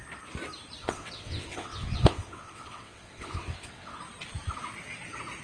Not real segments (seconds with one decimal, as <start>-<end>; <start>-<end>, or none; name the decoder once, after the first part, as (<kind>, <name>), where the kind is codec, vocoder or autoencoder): 0.8-4.0 (vocoder, WaveNeXt)

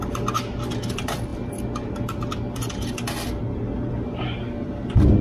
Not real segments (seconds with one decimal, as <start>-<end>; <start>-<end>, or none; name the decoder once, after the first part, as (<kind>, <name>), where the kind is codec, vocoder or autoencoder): none

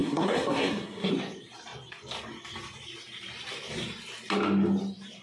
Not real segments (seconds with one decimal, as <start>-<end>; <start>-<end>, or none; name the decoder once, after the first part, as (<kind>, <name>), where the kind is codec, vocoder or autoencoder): 0.0-1.1 (codec, SNAC)

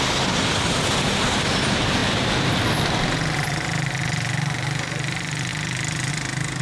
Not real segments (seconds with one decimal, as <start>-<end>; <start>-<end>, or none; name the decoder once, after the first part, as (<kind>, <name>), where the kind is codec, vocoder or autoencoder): none

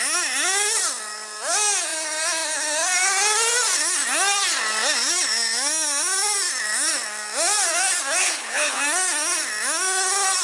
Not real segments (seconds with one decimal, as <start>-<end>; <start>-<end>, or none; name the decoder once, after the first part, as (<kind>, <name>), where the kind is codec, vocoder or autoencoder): 8.2-8.8 (codec, HILCodec)

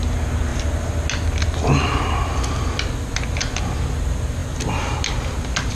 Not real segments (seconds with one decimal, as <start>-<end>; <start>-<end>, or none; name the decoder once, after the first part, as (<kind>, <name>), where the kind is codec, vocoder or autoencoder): none

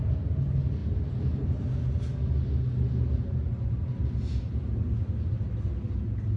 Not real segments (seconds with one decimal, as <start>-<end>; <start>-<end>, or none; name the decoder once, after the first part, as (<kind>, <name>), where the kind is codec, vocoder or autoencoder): 0.8-1.6 (vocoder, BigVGAN v2)